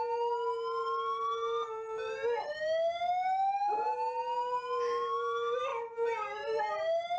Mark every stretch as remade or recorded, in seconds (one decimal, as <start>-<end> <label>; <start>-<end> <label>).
0.0-7.2 recorded